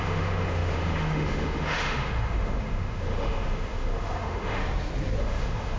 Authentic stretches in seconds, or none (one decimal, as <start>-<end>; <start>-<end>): 4.6-5.2